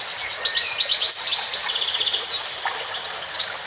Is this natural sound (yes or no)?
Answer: yes